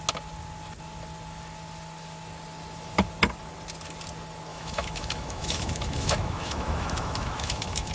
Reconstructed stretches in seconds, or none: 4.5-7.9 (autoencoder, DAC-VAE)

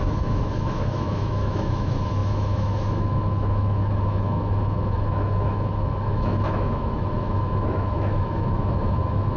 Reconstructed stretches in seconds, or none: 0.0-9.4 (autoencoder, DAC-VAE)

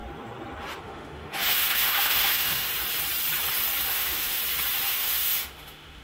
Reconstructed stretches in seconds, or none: 0.8-2.7 (autoencoder, DAC-VAE); 3.9-4.4; 4.9-6.0

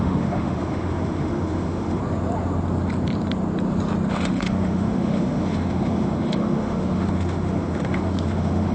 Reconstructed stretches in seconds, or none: 0.0-2.0 (autoencoder, DAC-VAE); 4.1-8.7

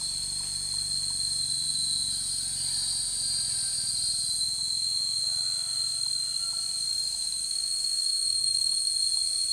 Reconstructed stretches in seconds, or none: 6.9-8.9 (autoencoder, DAC-VAE)

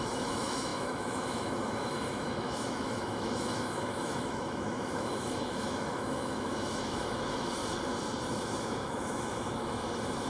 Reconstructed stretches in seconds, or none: 0.0-7.6 (autoencoder, DAC-VAE); 8.3-10.3